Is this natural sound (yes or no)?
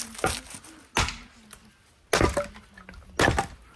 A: yes